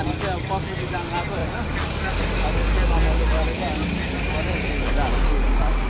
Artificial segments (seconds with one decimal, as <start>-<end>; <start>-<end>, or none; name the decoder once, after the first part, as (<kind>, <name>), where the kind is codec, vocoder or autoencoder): none